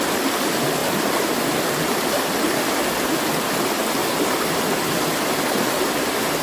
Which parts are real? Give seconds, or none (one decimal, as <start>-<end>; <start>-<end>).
0.0-4.0; 4.6-6.4